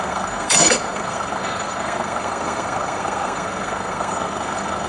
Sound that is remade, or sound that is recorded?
remade